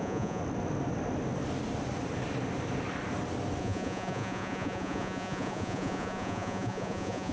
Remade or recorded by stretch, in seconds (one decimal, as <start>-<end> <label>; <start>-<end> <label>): 0.0-0.4 remade; 0.4-3.6 recorded; 3.6-7.3 remade